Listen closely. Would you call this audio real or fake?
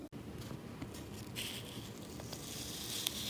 real